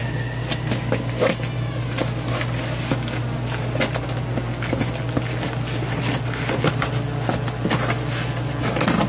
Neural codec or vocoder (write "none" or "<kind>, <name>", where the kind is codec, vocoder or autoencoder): none